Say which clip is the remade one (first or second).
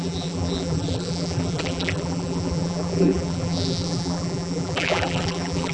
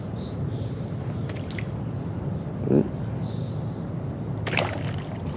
first